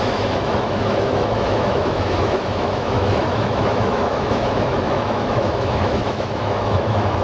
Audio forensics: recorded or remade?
remade